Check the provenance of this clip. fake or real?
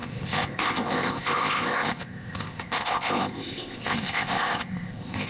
fake